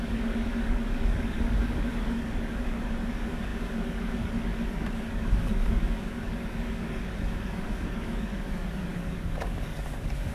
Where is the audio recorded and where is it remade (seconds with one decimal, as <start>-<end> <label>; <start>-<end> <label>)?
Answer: 0.0-10.3 remade